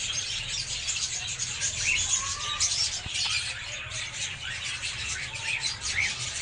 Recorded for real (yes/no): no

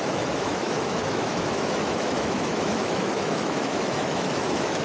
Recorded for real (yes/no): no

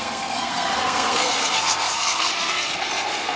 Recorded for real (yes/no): no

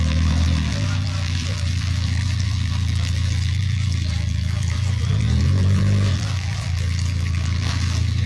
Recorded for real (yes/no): no